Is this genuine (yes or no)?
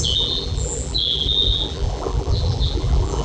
no